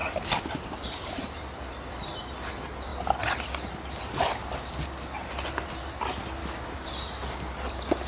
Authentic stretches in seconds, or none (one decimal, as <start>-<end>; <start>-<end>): 0.0-6.4; 6.9-8.1